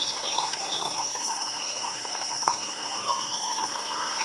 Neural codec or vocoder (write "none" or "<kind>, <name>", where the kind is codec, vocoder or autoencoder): codec, SNAC